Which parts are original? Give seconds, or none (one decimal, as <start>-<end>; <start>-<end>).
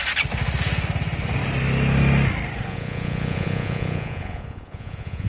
0.0-2.7